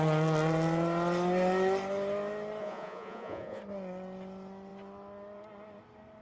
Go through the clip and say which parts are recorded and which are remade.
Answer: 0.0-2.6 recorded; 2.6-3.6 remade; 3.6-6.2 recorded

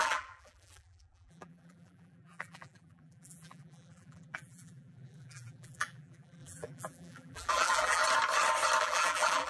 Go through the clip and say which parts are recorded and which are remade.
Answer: 0.0-8.0 remade; 8.0-8.8 recorded; 8.8-9.5 remade

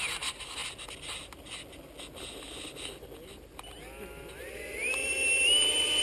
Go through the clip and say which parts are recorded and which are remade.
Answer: 0.0-0.6 remade; 0.6-4.2 recorded; 4.2-6.0 remade

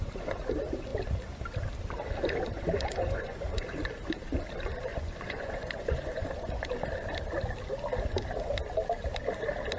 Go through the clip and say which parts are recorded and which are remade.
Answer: 0.0-3.0 recorded; 3.0-3.8 remade; 3.8-4.9 recorded; 4.9-6.3 remade; 6.3-9.8 recorded

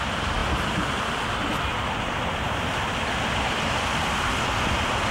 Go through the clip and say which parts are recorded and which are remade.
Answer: 0.0-5.1 recorded

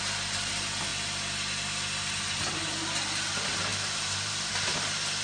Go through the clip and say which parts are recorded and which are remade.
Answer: 0.0-3.7 recorded; 3.7-4.5 remade; 4.5-5.2 recorded

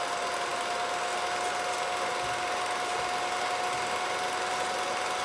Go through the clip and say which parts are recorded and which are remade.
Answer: 0.0-5.2 recorded